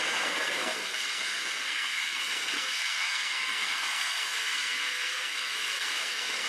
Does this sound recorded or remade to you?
remade